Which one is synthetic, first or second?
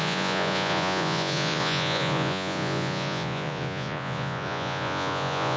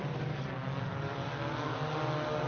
first